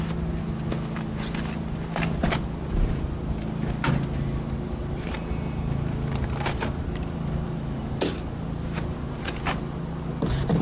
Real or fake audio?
real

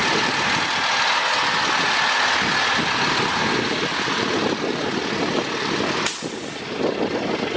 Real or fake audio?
real